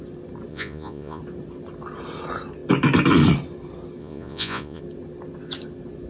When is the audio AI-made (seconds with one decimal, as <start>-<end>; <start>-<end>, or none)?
0.5-1.2; 4.0-4.8